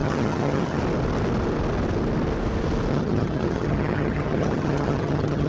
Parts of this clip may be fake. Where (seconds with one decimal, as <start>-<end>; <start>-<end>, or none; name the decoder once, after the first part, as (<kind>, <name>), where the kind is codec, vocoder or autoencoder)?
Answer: 0.0-0.8 (vocoder, HiFi-GAN); 2.9-5.5